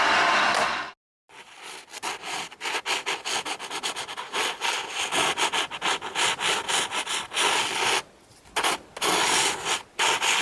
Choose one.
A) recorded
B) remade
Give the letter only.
A